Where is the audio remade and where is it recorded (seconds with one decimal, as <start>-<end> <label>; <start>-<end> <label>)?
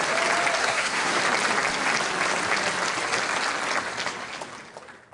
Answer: 0.0-0.6 recorded; 0.6-1.2 remade; 1.2-5.1 recorded